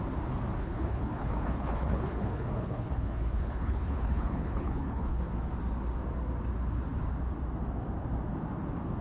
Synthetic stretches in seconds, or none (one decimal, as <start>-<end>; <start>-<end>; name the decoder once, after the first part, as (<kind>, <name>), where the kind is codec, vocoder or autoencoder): 0.6-5.2 (codec, HILCodec)